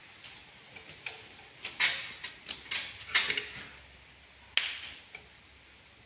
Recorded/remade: recorded